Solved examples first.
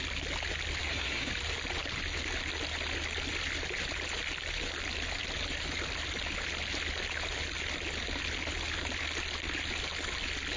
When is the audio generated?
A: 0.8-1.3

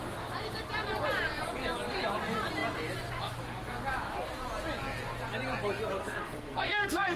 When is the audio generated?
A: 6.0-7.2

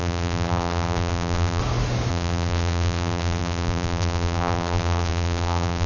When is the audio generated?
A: 0.0-1.6; 2.1-5.9